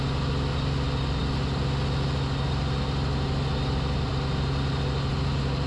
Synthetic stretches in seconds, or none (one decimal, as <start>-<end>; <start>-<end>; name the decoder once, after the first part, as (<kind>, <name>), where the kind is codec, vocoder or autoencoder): none